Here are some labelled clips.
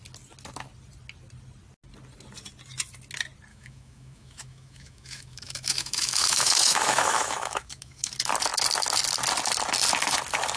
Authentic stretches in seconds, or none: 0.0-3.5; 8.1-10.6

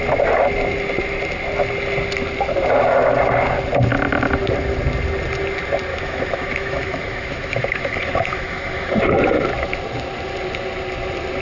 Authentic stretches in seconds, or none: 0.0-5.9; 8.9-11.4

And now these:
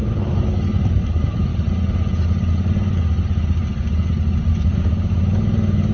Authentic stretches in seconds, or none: 1.5-4.5